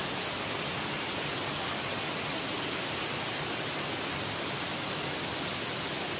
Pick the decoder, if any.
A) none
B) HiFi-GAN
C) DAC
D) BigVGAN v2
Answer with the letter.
A